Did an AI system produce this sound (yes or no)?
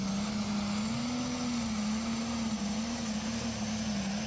no